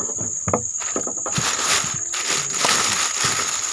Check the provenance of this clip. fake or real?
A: real